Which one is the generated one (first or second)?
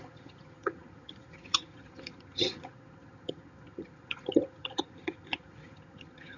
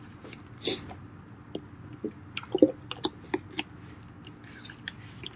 first